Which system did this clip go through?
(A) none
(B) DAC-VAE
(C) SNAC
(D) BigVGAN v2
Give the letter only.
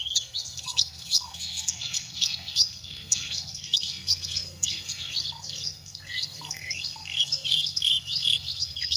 C